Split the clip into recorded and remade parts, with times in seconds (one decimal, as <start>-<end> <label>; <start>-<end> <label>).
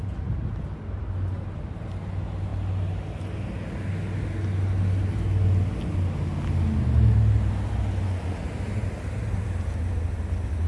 0.0-10.7 recorded